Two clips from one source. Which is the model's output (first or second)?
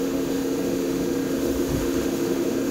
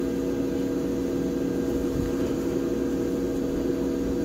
first